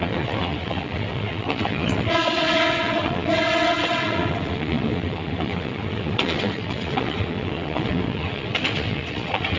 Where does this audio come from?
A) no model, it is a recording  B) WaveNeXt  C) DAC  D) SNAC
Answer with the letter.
B